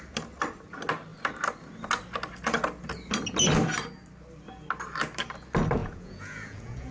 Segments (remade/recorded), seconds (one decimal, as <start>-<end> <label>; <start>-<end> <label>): 0.0-5.8 recorded; 5.8-6.9 remade